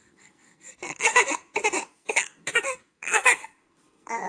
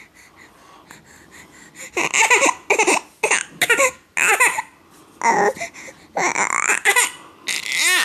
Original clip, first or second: second